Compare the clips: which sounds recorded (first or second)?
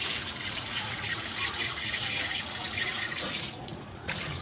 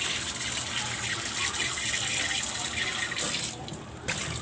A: second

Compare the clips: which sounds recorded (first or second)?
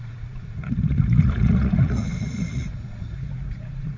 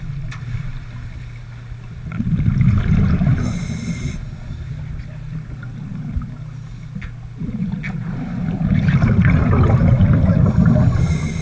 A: second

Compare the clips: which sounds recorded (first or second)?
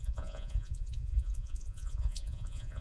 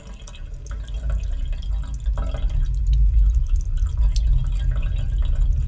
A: second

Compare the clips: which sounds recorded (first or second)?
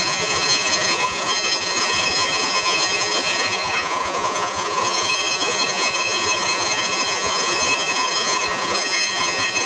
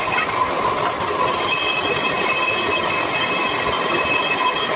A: second